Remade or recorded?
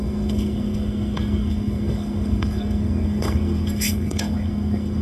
remade